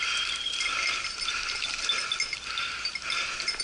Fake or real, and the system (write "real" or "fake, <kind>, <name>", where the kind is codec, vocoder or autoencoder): real